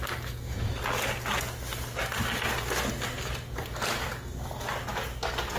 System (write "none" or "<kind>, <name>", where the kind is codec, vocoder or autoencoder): none